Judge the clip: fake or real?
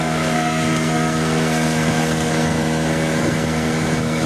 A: fake